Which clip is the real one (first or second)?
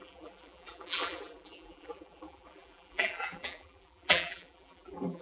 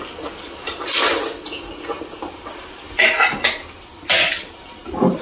second